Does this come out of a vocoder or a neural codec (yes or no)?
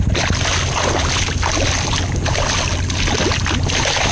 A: no